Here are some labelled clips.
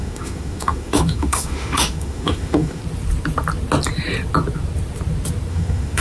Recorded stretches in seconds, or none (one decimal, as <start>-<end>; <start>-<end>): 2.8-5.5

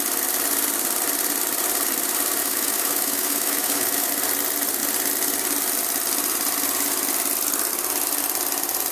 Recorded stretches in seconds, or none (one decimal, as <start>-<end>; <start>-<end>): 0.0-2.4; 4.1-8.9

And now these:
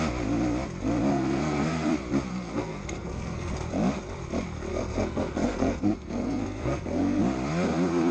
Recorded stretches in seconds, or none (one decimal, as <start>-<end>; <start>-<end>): 0.0-1.1; 1.9-2.3; 3.5-4.7; 7.2-8.1

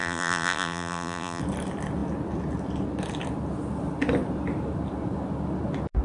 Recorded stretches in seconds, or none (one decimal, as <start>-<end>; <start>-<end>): 1.4-6.0